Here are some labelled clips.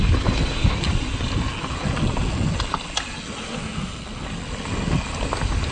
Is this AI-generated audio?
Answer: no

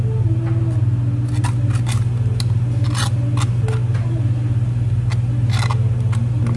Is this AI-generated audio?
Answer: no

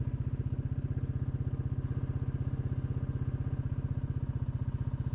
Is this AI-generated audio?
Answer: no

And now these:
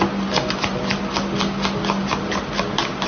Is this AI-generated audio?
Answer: no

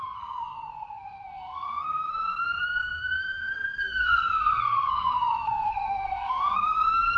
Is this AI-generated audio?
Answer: yes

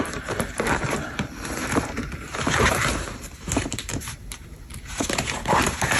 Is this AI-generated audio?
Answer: yes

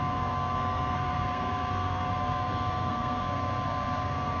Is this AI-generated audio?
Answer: yes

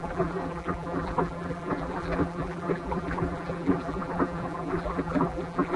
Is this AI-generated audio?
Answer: yes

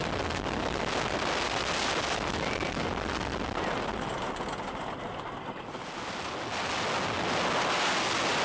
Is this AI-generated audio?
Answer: no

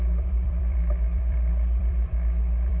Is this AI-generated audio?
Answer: yes